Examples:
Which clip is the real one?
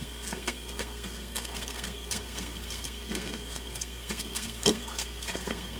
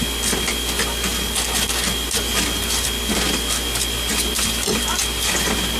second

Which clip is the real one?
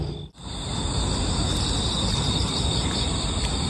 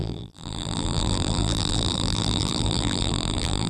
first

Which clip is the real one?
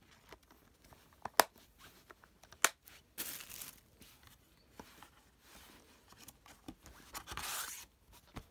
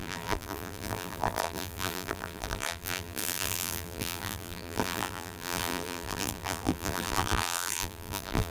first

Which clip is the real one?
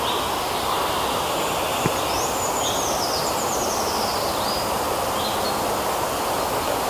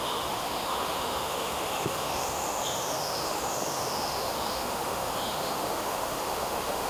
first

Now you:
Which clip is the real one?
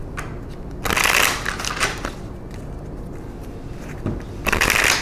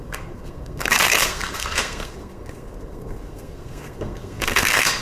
first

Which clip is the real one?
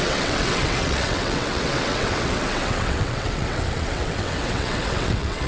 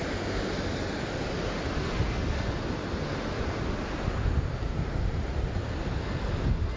second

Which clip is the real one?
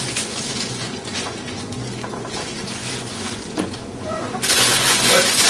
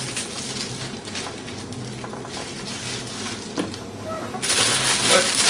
second